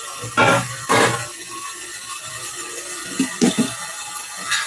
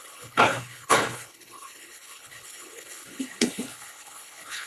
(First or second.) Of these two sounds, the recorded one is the first